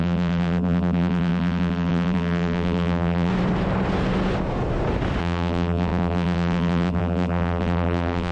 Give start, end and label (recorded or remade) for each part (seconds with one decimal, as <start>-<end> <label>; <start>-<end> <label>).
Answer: 0.0-3.3 remade; 3.3-5.2 recorded; 5.2-8.3 remade